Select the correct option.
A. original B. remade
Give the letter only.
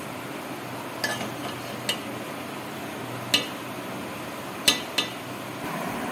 A